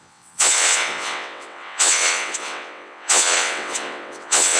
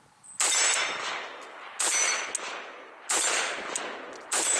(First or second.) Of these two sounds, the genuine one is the second